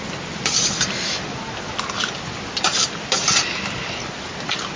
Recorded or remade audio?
recorded